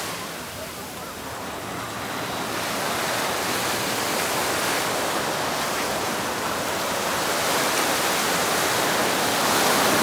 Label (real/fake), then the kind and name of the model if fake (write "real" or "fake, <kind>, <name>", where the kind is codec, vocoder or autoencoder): real